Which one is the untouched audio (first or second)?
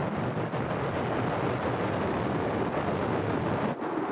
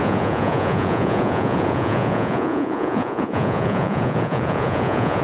first